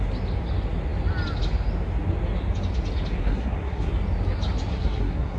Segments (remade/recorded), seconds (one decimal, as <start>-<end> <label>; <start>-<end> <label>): 0.0-3.2 recorded; 3.2-3.9 remade; 3.9-4.7 recorded; 4.7-5.4 remade